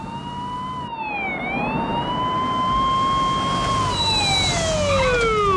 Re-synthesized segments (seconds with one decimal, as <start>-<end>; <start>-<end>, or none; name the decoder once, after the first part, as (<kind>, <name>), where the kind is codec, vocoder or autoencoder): none